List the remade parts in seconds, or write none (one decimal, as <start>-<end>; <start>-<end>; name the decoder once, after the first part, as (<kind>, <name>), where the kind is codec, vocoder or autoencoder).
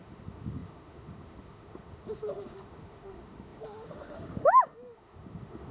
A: 0.0-5.7 (autoencoder, DAC-VAE)